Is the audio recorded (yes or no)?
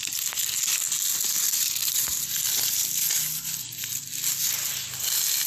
yes